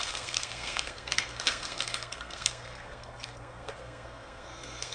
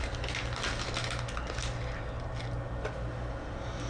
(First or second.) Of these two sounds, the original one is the second